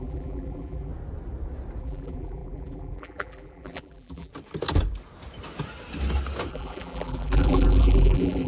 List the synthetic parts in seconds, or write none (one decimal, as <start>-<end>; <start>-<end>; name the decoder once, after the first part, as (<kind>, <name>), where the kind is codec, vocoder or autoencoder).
0.0-0.9 (vocoder, BigVGAN v2); 1.8-4.3; 6.5-8.5